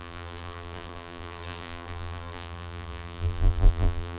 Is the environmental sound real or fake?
fake